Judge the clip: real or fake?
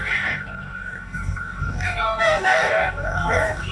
fake